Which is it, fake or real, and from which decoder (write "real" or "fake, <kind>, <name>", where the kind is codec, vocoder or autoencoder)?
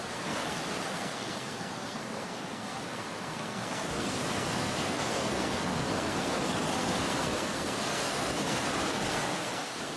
fake, codec, SNAC